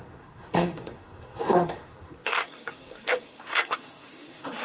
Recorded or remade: remade